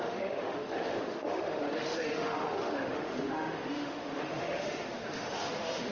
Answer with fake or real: fake